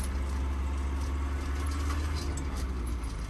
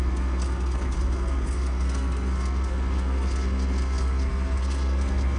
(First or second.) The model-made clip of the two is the second